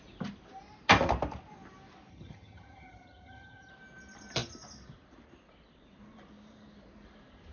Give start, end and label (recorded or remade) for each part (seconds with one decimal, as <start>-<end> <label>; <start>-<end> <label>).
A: 0.0-2.1 recorded; 2.1-3.7 remade; 3.7-7.5 recorded